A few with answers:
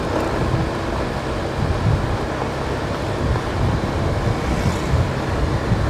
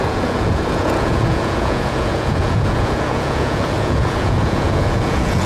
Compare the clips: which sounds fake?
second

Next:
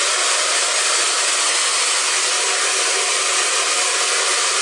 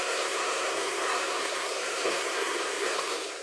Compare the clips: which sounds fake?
second